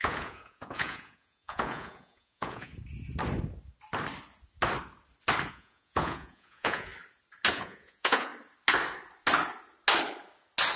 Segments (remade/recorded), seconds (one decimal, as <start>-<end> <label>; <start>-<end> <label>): 0.0-2.7 remade; 2.7-5.5 recorded; 5.5-6.9 remade; 6.9-7.5 recorded; 7.5-8.3 remade; 8.3-10.8 recorded